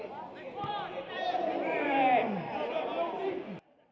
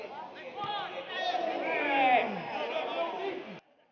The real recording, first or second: second